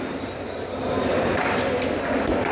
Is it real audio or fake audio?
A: real